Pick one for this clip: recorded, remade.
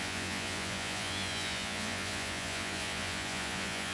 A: remade